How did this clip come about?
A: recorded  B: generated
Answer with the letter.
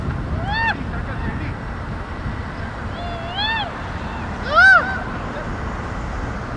A